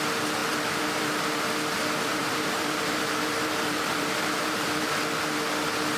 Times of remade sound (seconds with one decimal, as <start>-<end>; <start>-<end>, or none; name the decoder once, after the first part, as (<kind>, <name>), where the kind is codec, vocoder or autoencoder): 2.1-4.9 (vocoder, BigVGAN v2)